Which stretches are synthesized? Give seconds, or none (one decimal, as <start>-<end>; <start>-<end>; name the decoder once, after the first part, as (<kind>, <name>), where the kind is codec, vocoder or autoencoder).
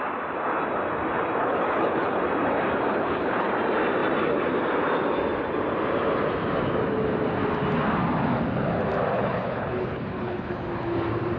1.4-2.2 (codec, HILCodec); 2.9-3.5; 9.1-10.5